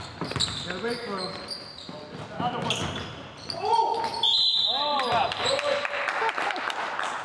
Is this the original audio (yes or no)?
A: yes